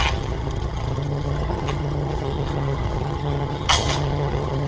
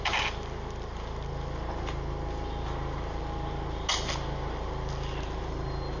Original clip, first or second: second